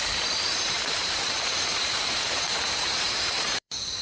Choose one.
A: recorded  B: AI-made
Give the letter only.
B